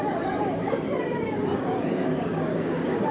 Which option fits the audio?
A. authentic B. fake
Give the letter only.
B